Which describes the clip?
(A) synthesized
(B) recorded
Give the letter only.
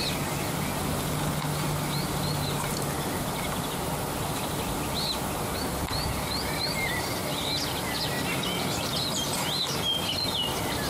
B